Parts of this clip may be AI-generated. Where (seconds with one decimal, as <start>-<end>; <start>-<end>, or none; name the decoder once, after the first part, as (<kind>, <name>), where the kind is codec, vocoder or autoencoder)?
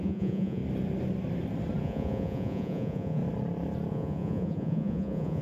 0.0-0.6 (vocoder, Vocos); 1.8-3.2; 3.9-5.4